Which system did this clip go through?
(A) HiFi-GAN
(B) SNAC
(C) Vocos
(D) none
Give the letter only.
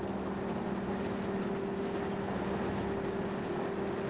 D